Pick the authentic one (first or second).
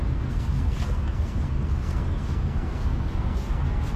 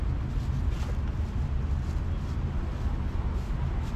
second